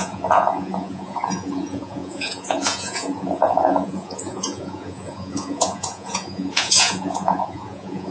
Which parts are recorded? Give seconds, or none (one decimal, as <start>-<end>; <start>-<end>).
none